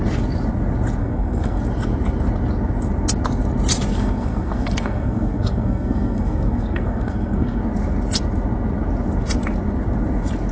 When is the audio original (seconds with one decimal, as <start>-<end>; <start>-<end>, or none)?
0.0-1.0; 1.6-3.9; 7.6-10.5